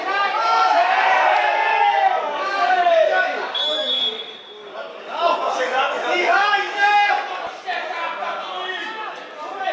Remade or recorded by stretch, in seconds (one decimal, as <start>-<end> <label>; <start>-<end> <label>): 0.0-1.7 recorded; 1.7-4.0 remade; 4.0-4.9 recorded; 4.9-7.1 remade; 7.1-9.7 recorded

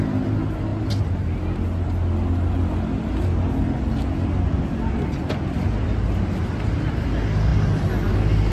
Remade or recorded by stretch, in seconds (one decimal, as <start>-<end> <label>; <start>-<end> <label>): 0.0-8.5 recorded

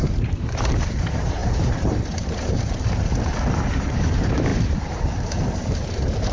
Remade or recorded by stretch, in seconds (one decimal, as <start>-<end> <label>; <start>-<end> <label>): 0.0-6.3 remade

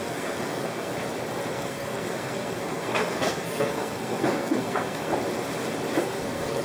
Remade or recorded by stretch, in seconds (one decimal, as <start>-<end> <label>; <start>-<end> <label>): 0.0-0.9 remade; 0.9-1.5 recorded; 1.5-5.1 remade; 5.1-6.0 recorded; 6.0-6.6 remade